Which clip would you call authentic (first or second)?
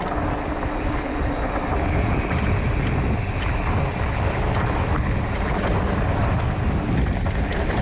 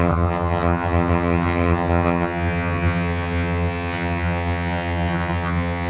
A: first